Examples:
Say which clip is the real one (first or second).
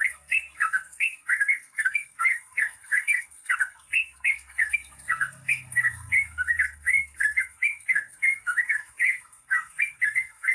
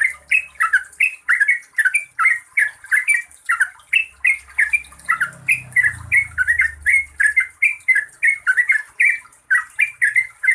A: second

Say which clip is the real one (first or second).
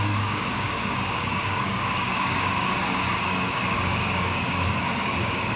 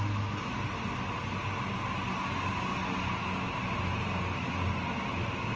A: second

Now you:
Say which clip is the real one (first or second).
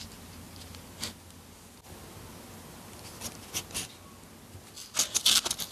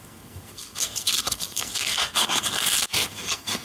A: first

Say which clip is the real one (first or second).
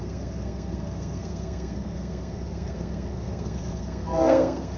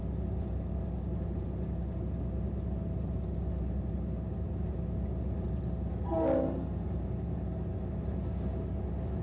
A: second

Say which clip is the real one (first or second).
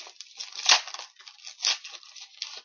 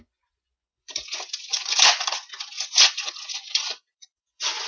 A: first